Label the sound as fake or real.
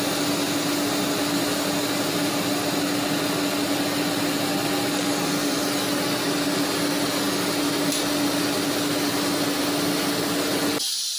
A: real